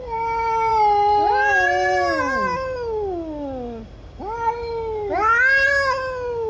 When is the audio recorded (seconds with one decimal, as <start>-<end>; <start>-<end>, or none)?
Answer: 0.0-6.5